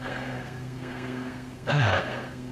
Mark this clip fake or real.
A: fake